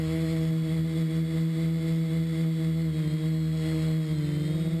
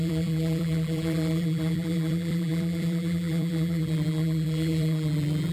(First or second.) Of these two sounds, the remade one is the second